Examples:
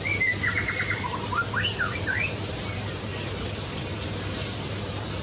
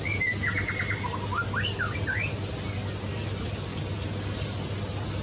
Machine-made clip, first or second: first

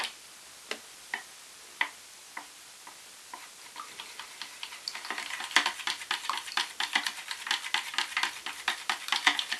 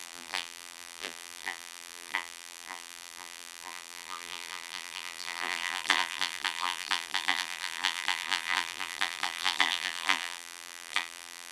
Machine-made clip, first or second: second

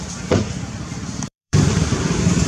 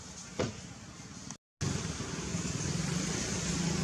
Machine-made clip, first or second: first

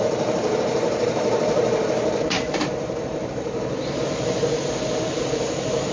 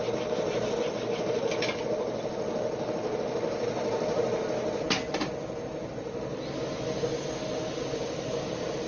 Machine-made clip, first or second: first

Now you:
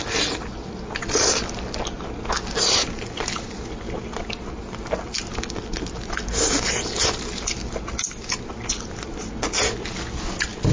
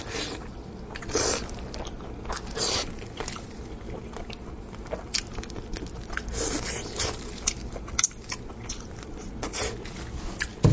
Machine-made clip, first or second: second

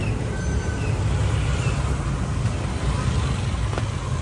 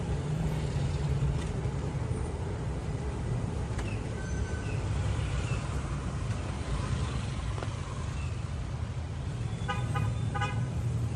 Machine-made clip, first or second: second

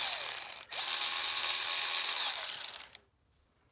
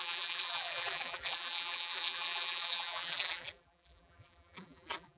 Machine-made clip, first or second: second